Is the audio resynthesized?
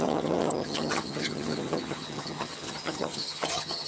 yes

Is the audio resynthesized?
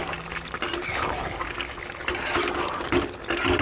no